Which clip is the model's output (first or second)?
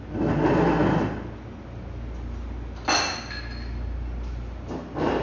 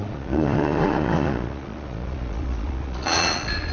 second